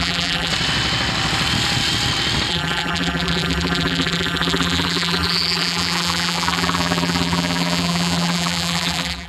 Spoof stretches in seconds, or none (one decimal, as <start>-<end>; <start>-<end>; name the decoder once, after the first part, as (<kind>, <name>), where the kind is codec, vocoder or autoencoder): 0.0-0.5 (vocoder, BigVGAN v2); 2.5-9.3